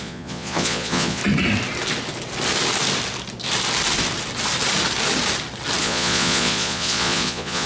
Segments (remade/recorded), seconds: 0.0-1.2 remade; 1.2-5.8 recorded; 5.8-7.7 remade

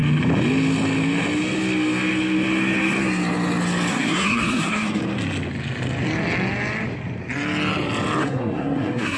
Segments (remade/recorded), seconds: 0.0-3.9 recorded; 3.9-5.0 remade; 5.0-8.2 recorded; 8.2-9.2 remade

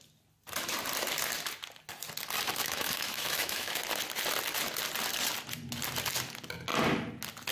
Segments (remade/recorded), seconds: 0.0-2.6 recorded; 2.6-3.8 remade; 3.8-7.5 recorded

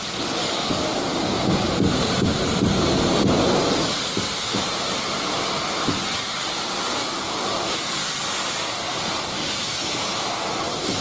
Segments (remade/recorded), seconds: 0.0-0.4 recorded; 0.4-1.0 remade; 1.0-11.0 recorded

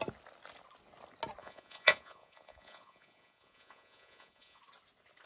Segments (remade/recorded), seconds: 0.0-1.4 recorded; 1.4-4.6 remade; 4.6-5.3 recorded